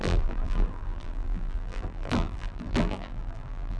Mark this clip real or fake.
fake